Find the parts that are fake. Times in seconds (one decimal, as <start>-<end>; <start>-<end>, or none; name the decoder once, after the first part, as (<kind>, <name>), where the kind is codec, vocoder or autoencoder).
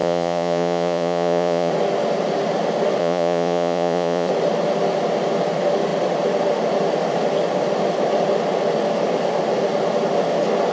0.0-1.7 (vocoder, Vocos); 3.0-4.3